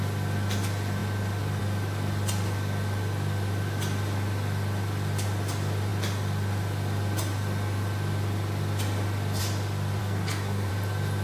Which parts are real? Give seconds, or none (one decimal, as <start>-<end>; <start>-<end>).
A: 0.0-10.0; 10.7-11.2